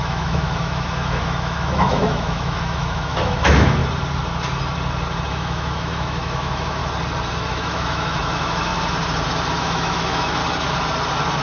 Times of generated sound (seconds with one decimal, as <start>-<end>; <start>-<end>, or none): 0.0-3.8; 5.3-6.8; 7.5-8.7; 9.5-10.4